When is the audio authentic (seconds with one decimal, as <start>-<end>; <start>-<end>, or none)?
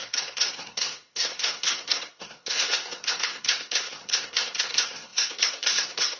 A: none